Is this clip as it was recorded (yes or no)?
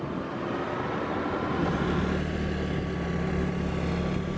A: yes